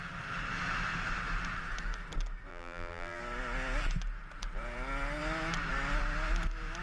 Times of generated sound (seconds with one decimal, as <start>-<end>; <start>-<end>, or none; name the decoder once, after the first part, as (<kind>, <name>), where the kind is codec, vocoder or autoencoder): 2.5-3.2 (vocoder, BigVGAN v2)